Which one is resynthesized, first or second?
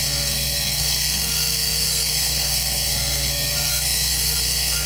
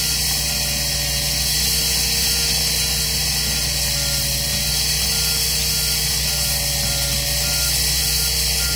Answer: first